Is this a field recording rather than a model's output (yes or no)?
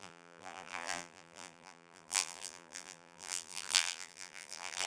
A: no